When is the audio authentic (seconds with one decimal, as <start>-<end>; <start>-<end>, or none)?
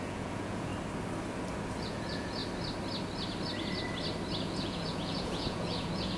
0.7-1.8; 2.4-4.4